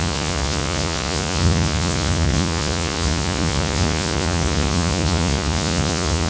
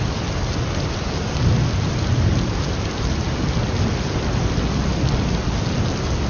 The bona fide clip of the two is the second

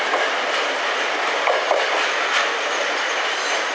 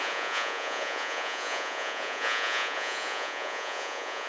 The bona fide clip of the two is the first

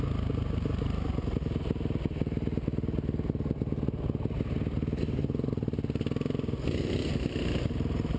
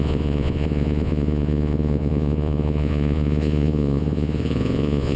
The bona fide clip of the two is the first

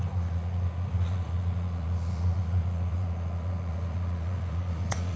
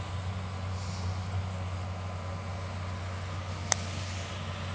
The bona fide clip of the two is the second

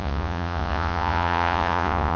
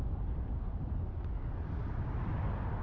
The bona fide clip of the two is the second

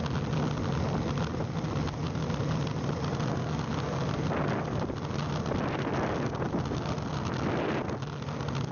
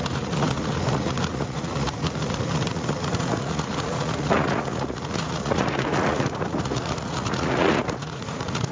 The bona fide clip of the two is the first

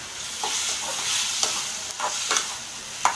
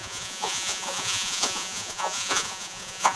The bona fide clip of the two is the first